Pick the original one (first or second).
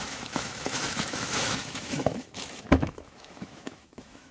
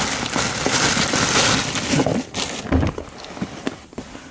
second